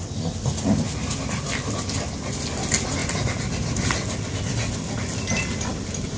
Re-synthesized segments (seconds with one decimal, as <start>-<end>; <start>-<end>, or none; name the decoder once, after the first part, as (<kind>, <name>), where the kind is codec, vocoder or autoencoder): none

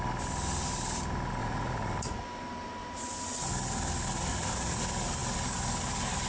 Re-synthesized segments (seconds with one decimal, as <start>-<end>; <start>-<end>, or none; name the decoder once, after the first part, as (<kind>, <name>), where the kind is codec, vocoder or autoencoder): 1.4-2.2 (vocoder, Vocos); 4.3-4.8

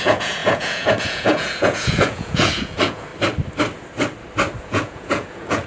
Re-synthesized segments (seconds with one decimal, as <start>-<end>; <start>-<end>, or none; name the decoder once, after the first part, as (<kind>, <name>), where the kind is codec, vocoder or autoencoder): 0.0-3.1 (vocoder, Vocos); 4.6-5.7

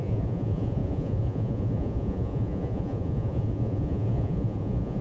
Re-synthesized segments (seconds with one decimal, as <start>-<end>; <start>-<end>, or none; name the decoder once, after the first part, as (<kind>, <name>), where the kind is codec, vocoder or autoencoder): 0.0-5.0 (vocoder, Vocos)

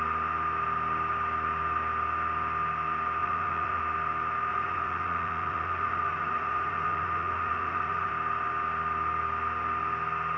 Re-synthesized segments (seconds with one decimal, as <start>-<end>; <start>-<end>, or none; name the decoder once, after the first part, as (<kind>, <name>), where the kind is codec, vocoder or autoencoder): 3.2-3.8 (vocoder, Vocos); 4.5-8.1